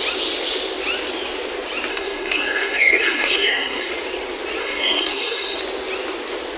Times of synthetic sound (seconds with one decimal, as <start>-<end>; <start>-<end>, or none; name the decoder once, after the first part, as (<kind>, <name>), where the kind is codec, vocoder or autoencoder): 1.9-3.9 (codec, SNAC); 4.6-5.6